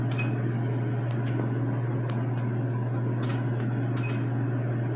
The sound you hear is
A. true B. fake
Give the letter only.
A